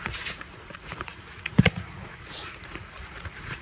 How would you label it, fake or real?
fake